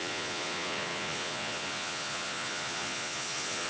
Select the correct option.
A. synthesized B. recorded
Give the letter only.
A